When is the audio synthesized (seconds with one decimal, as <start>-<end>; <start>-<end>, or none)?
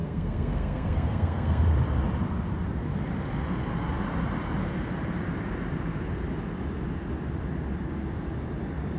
0.0-1.6